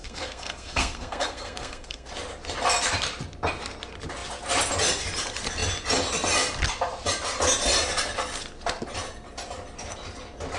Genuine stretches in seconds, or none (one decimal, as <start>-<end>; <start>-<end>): 2.1-10.6

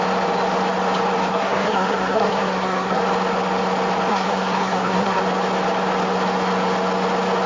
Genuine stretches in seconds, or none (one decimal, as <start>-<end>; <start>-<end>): 0.0-1.3; 3.0-4.1; 5.2-7.5

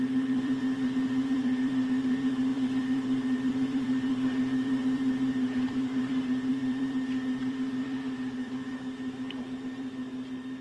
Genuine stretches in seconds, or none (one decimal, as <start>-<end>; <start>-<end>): none

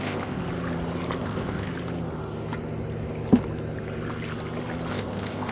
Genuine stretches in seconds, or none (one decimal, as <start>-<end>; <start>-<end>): 0.4-1.2; 1.7-4.9

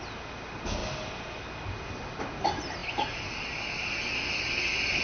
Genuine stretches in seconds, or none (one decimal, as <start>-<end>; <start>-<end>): 0.0-5.0

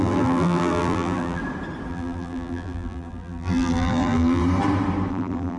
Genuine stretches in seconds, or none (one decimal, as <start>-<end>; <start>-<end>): 1.4-1.9; 4.4-5.1

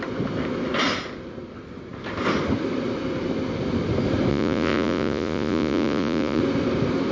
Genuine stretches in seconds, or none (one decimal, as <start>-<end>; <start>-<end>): 0.0-4.3; 6.4-7.1